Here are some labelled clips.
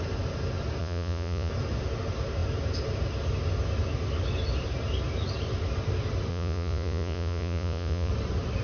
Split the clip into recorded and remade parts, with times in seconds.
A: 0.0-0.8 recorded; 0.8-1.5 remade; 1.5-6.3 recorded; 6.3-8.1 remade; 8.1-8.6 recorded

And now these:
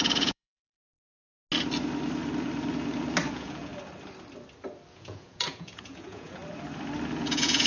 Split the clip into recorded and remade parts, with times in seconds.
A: 0.0-0.8 remade; 0.8-3.3 recorded; 3.3-3.7 remade; 3.7-4.9 recorded; 4.9-6.4 remade; 6.4-7.2 recorded; 7.2-7.7 remade

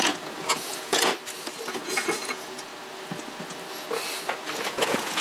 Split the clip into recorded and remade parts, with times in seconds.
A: 0.0-1.1 remade; 1.1-1.7 recorded; 1.7-2.7 remade; 2.7-4.7 recorded; 4.7-5.2 remade

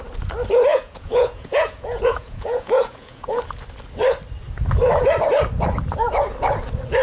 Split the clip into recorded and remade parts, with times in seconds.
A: 0.0-0.7 recorded; 0.7-3.4 remade; 3.4-7.0 recorded

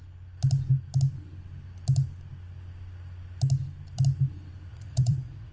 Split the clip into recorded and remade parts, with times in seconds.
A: 0.0-4.7 recorded; 4.7-5.5 remade

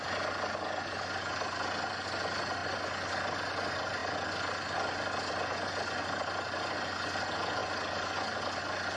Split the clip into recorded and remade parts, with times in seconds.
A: 0.0-9.0 recorded